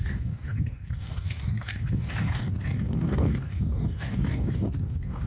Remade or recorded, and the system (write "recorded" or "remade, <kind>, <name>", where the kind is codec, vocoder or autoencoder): remade, codec, DAC